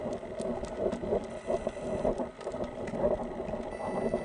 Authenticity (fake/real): real